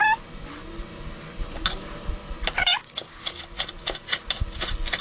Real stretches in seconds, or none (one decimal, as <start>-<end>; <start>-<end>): 0.0-2.6; 3.4-5.0